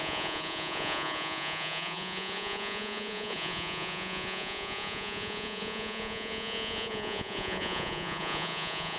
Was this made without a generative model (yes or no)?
no